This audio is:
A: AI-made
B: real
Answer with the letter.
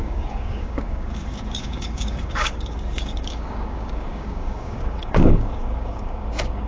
A